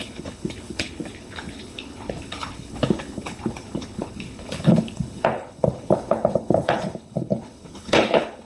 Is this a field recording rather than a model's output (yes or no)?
no